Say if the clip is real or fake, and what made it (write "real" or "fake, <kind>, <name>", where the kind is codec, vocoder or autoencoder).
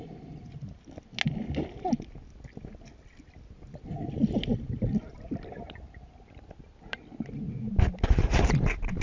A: real